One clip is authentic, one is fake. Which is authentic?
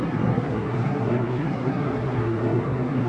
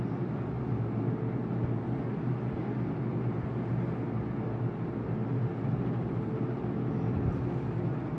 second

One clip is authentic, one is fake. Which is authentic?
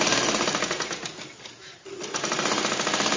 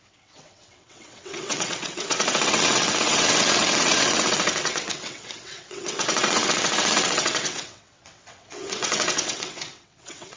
first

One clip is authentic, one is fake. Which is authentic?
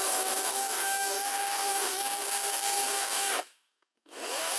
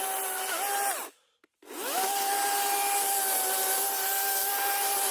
second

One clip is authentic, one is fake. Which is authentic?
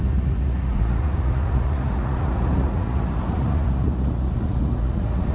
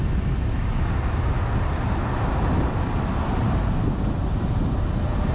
second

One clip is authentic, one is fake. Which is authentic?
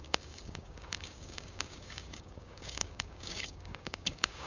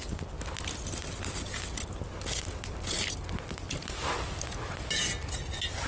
second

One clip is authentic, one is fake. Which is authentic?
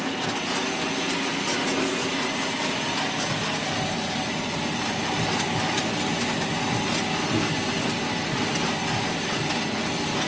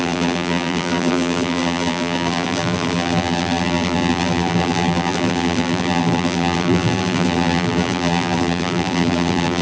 first